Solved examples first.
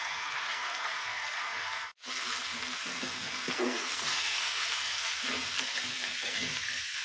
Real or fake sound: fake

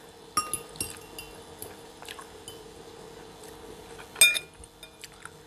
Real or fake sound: real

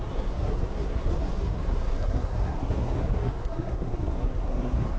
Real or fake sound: fake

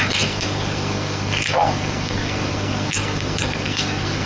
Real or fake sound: fake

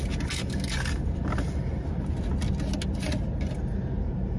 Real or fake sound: real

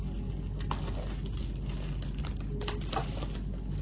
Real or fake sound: real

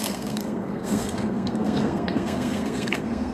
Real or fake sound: fake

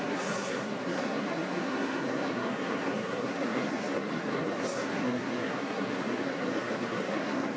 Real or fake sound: fake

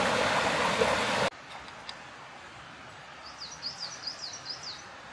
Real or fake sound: real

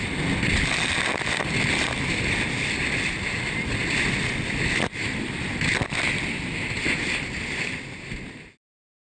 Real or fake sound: real